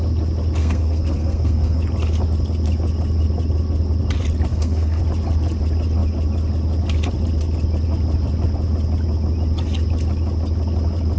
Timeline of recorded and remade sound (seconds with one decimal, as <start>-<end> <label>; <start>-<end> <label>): 0.0-0.6 recorded; 0.6-1.8 remade; 1.8-4.5 recorded; 4.5-5.0 remade; 5.0-11.2 recorded